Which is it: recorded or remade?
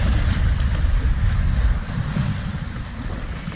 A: recorded